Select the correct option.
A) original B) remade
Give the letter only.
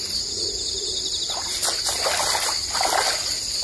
A